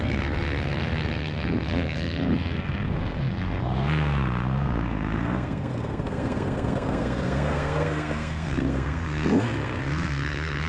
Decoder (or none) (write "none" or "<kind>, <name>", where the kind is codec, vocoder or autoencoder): codec, SNAC